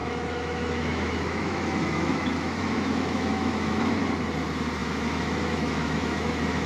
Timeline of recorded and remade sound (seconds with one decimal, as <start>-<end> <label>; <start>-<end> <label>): 0.0-4.0 remade; 4.0-4.8 recorded; 4.8-6.7 remade